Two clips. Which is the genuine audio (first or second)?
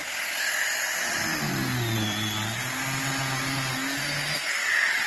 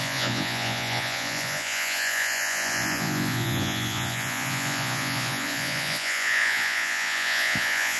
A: first